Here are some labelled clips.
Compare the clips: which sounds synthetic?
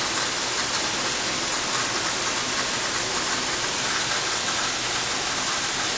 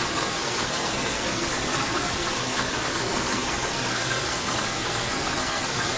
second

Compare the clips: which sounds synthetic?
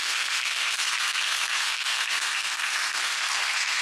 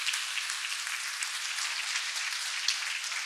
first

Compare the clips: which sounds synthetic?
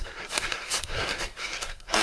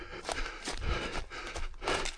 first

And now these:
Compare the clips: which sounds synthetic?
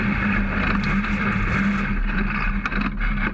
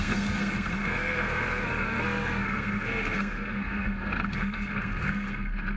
second